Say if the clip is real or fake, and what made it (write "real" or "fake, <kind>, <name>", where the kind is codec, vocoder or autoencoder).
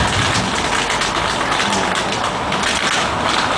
real